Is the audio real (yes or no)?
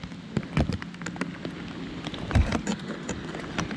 yes